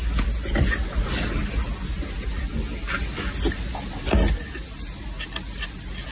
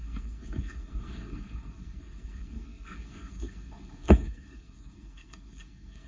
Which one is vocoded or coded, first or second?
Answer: second